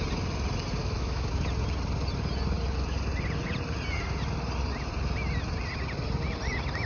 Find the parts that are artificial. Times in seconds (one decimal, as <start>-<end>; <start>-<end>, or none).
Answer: 0.8-1.3